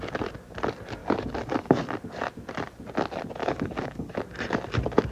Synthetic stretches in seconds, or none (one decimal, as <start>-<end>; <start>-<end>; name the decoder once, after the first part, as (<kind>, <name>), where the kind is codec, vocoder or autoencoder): 1.0-1.8 (codec, DAC); 3.4-4.2